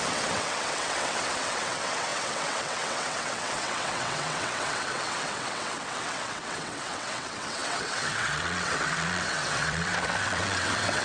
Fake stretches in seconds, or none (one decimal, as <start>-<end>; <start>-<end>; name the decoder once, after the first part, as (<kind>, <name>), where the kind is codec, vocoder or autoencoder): 0.0-11.0 (vocoder, WaveNeXt)